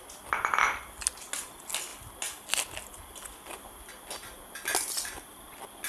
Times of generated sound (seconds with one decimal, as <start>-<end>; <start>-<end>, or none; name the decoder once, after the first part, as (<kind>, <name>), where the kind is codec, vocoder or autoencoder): none